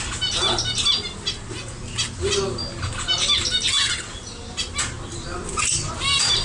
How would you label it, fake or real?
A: real